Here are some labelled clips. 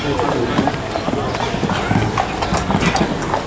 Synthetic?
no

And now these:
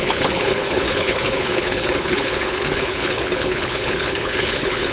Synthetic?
yes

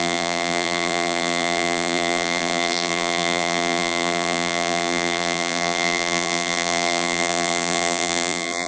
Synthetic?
yes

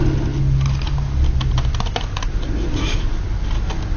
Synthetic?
no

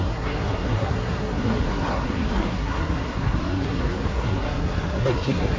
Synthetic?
yes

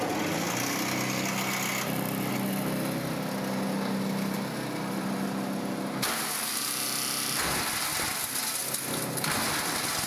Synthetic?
no